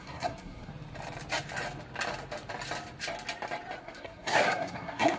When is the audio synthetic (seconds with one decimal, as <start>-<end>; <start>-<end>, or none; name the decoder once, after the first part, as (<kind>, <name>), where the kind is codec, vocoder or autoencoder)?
0.0-0.7 (codec, SNAC); 3.8-5.2